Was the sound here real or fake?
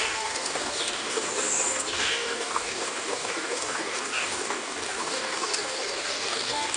fake